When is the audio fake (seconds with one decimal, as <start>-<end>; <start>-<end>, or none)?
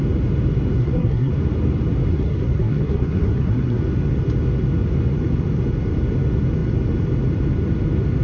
0.8-1.3; 2.1-3.8